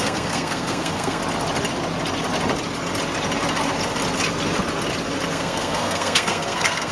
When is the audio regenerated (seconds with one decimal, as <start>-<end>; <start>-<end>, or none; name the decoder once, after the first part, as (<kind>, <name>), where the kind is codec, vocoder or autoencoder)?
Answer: 0.0-1.2 (codec, SNAC); 5.3-6.9